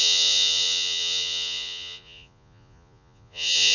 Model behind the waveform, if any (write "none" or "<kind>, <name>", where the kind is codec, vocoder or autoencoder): vocoder, Vocos